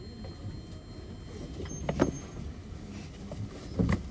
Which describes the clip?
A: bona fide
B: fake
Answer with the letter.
A